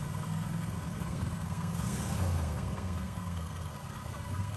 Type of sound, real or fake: fake